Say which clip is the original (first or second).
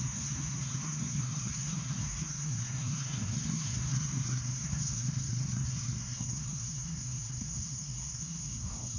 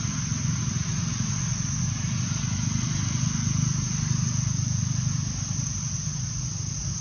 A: second